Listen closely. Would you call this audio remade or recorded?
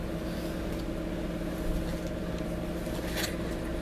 recorded